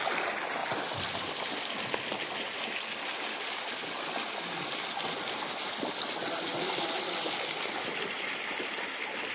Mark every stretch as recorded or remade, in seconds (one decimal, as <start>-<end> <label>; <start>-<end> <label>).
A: 0.0-9.3 recorded